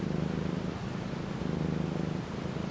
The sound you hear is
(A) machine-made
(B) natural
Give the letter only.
B